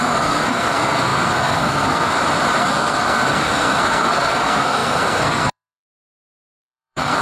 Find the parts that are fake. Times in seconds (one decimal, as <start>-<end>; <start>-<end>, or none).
0.0-2.1; 2.6-7.2